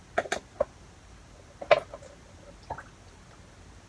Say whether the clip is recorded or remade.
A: recorded